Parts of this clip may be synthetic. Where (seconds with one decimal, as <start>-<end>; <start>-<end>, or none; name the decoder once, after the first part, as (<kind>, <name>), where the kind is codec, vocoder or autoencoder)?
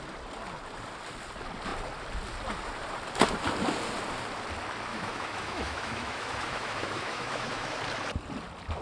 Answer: 4.9-7.8 (autoencoder, DAC-VAE)